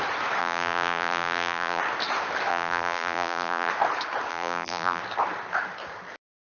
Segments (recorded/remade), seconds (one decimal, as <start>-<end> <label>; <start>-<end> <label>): 0.0-0.4 recorded; 0.4-1.8 remade; 1.8-2.5 recorded; 2.5-3.7 remade; 3.7-4.3 recorded; 4.3-5.0 remade; 5.0-6.5 recorded